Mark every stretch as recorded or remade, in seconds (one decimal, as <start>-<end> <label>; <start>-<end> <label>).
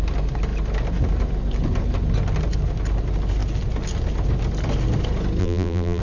0.0-5.4 recorded; 5.4-6.0 remade